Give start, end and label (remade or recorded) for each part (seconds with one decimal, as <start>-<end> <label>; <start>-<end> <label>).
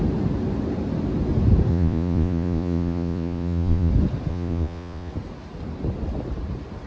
0.0-1.7 recorded; 1.7-3.9 remade; 3.9-4.3 recorded; 4.3-5.1 remade; 5.1-6.9 recorded